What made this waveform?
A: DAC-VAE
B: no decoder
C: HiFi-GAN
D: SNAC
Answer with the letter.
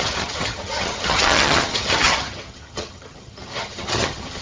C